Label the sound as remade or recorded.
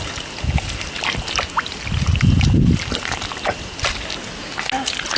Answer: recorded